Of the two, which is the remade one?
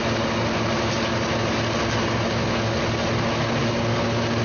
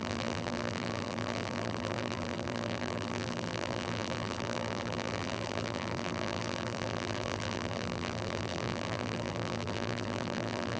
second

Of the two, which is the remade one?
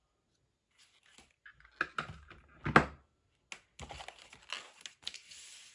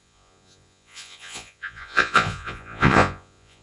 second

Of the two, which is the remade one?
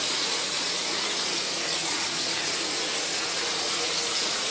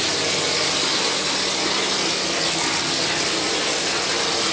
first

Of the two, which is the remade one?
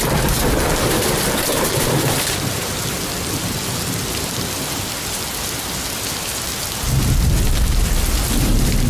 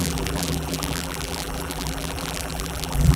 second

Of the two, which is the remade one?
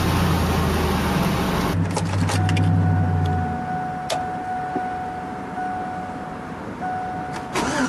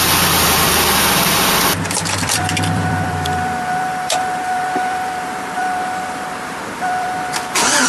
second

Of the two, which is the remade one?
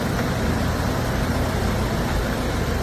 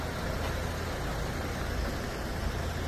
first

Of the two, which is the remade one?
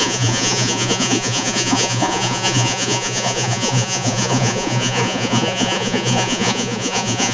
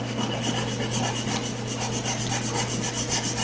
first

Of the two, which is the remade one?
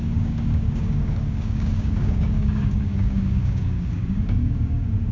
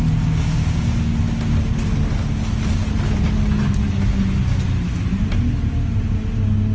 first